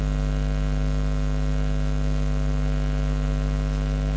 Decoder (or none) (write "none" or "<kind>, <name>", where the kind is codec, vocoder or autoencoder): none